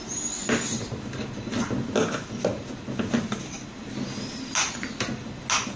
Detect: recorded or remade recorded